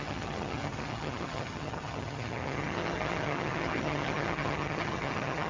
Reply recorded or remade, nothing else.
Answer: remade